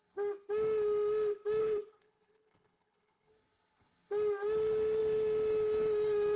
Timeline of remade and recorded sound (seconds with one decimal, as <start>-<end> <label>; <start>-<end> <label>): 0.0-1.6 recorded; 1.6-3.3 remade; 3.3-6.4 recorded